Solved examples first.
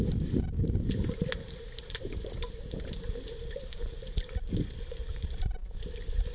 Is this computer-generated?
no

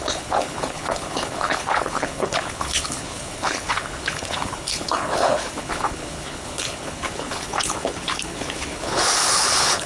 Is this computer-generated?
yes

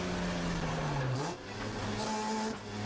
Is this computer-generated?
no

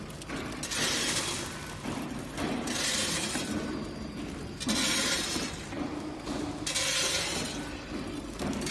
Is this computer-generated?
no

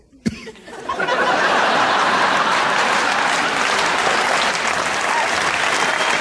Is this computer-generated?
no